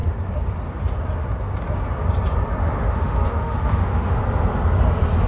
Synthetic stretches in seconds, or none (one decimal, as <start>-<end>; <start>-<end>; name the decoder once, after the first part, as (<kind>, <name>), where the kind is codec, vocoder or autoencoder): 2.6-4.2 (autoencoder, DAC-VAE)